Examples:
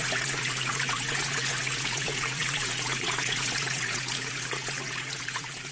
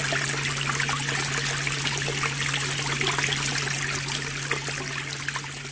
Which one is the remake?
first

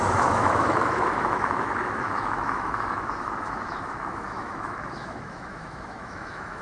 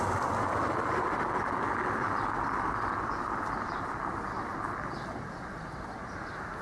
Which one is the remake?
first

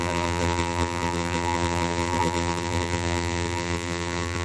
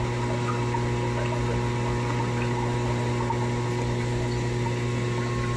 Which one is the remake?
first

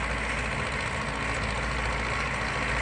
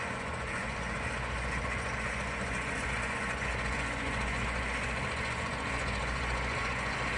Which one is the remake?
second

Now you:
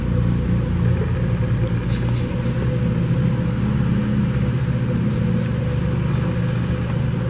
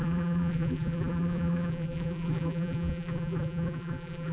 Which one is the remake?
second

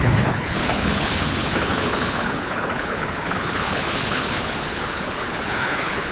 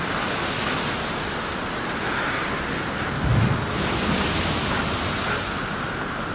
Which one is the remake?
first